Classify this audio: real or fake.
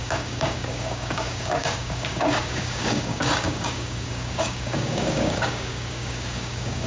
fake